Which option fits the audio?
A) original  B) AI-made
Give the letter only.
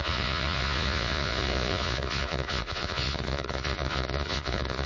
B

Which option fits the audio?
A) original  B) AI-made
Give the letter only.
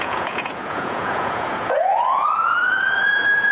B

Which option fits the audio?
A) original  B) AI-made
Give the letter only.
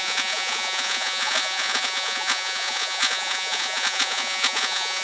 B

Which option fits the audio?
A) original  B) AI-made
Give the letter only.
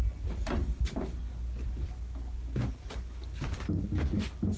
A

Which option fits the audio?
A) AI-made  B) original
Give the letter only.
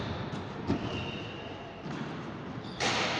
B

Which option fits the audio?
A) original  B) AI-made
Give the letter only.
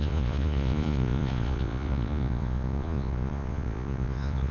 B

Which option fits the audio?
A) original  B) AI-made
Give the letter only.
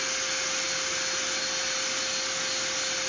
A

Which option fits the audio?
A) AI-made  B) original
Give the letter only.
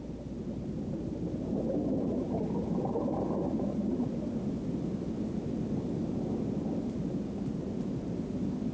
B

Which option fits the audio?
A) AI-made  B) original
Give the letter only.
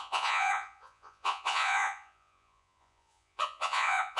A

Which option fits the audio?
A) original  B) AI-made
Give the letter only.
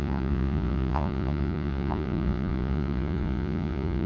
B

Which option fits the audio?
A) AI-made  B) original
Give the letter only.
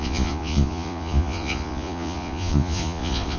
A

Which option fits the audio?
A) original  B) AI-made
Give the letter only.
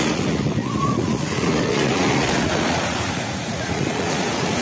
B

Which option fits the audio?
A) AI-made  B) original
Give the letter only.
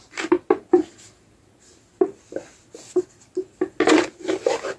B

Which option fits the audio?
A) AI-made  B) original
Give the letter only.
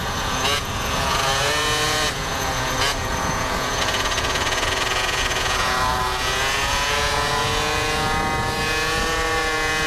A